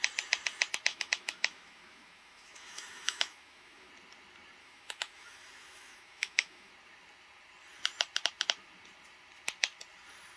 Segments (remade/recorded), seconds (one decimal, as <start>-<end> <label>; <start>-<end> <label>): 0.0-0.9 recorded; 0.9-3.9 remade; 3.9-4.6 recorded; 4.6-6.7 remade; 6.7-10.4 recorded